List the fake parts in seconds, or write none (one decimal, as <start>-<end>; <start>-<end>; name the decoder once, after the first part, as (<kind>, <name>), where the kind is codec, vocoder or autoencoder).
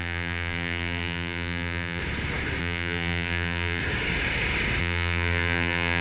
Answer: 0.0-2.0 (vocoder, BigVGAN v2); 2.6-3.8; 4.8-6.0